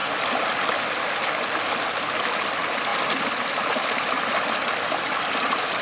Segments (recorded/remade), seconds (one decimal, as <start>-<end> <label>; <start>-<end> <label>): 0.0-5.8 recorded